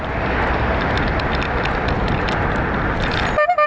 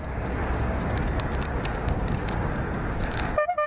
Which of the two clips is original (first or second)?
first